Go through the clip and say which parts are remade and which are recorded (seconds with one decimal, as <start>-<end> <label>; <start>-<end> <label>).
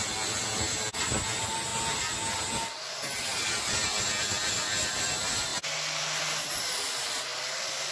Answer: 0.0-1.7 remade; 1.7-2.8 recorded; 2.8-5.5 remade; 5.5-6.2 recorded; 6.2-7.9 remade